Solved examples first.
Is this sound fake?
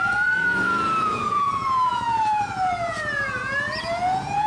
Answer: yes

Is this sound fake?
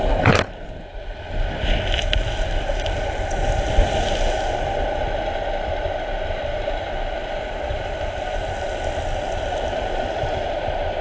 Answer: no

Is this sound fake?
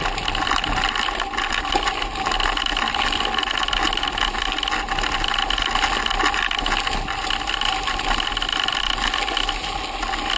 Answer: no